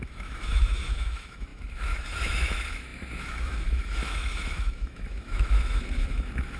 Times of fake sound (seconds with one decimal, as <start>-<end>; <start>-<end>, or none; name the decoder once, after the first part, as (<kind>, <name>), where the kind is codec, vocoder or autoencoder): 0.0-6.6 (autoencoder, DAC-VAE)